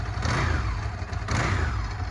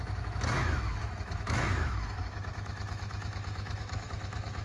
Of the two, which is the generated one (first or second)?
second